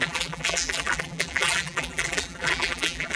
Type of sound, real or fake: fake